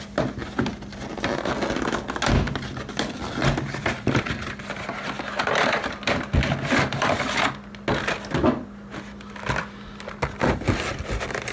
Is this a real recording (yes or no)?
yes